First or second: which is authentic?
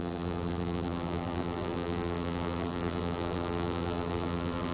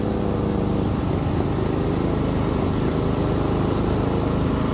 second